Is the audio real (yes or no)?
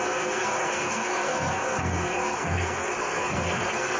no